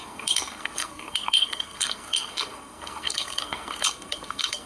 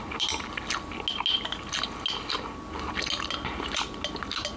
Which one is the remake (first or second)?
first